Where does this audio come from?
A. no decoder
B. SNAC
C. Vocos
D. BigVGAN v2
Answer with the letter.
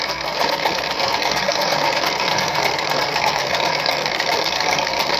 B